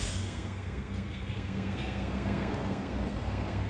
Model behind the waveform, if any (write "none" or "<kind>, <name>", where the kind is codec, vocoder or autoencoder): codec, SNAC